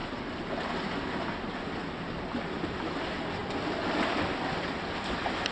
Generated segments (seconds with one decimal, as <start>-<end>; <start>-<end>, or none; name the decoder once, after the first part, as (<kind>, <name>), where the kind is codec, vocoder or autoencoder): none

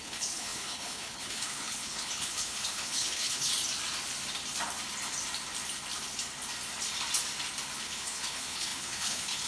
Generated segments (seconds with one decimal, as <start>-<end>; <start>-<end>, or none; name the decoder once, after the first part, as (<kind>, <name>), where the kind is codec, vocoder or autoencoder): 0.0-3.5 (codec, HILCodec); 7.8-9.5

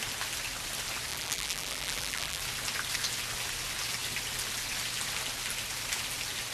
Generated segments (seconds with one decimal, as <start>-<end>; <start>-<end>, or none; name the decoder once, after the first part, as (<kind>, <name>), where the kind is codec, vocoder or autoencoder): 1.1-2.4 (vocoder, BigVGAN v2)

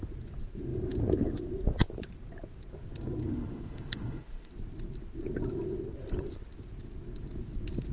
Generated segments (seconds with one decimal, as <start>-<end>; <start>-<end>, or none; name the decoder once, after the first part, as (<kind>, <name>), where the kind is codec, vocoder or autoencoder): 3.2-4.5 (autoencoder, DAC-VAE)

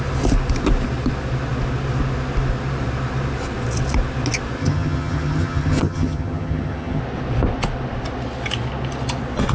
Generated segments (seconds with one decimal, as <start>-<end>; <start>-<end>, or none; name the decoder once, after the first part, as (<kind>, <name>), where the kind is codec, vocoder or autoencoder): 4.6-7.0 (vocoder, HiFi-GAN)